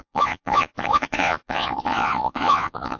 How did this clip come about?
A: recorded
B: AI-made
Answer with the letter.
B